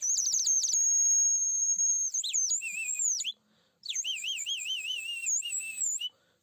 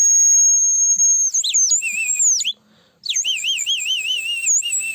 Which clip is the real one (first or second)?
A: second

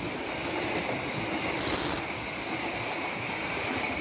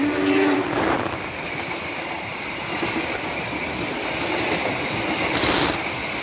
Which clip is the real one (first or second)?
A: first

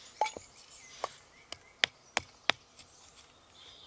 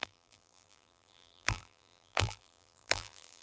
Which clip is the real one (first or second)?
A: first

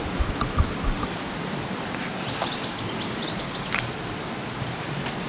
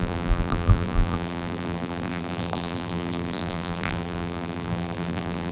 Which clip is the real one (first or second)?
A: first